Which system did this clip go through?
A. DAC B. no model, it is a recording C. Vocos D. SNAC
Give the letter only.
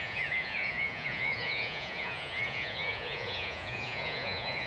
C